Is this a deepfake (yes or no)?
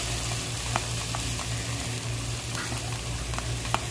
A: no